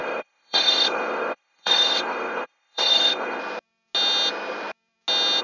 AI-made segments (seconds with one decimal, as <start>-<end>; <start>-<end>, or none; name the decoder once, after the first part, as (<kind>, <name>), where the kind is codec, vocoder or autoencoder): 0.0-3.4 (codec, ZipCodec)